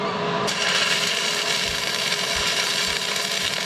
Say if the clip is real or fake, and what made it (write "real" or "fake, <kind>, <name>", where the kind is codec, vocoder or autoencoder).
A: fake, vocoder, BigVGAN v2